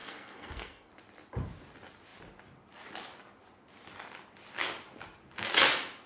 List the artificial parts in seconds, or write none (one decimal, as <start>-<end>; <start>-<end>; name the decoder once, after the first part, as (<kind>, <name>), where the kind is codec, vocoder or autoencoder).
0.0-0.9 (codec, SNAC)